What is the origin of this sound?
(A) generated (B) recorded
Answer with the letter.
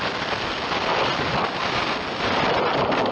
B